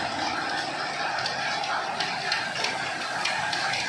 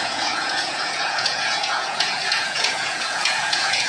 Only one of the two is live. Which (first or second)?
first